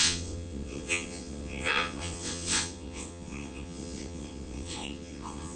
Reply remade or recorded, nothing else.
remade